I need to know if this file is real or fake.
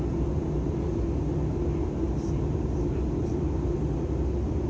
real